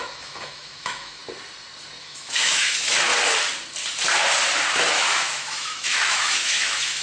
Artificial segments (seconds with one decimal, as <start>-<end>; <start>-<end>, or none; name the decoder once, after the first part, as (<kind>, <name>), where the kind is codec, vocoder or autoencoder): 0.0-1.2 (autoencoder, DAC-VAE); 2.0-3.1; 4.7-7.0